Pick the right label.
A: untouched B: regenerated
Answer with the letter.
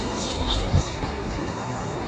B